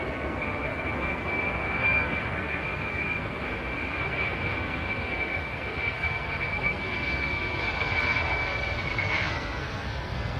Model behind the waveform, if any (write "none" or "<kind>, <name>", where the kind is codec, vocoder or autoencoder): codec, SNAC